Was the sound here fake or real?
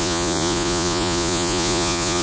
fake